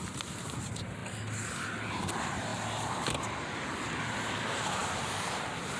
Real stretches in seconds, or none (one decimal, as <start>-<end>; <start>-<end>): 0.0-4.8